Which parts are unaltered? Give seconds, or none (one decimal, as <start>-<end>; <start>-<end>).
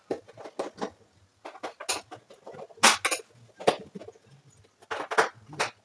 0.0-5.8